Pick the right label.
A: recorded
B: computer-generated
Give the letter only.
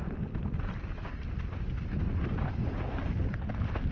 A